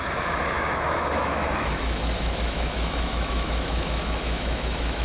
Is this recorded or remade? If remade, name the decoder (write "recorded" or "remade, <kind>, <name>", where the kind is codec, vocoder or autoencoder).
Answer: remade, autoencoder, DAC-VAE